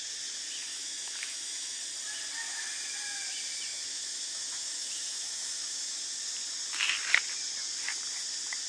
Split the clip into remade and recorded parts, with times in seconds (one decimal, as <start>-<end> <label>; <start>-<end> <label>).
0.0-0.7 recorded; 0.7-1.8 remade; 1.8-3.7 recorded; 3.7-6.0 remade; 6.0-8.7 recorded